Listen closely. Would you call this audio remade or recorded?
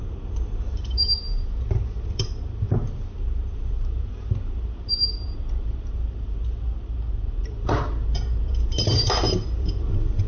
remade